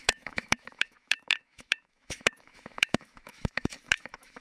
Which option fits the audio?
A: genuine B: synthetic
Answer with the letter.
B